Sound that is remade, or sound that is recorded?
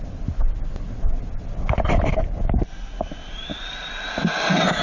recorded